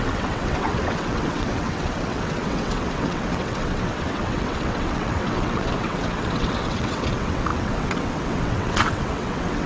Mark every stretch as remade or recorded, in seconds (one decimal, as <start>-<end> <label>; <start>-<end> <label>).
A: 0.0-9.7 remade